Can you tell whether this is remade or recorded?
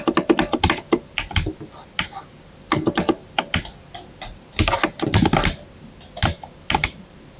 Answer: recorded